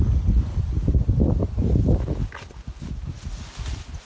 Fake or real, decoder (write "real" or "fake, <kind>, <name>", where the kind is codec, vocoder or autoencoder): real